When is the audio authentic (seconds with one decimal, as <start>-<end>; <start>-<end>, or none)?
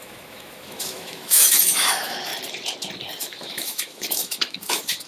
2.3-3.2